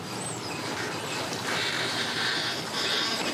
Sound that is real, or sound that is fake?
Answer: real